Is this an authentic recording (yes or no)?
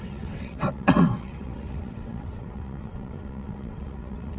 no